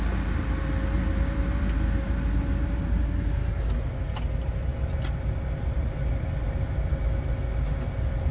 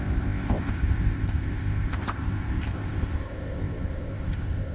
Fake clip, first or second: second